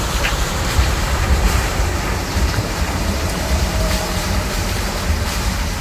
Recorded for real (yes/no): no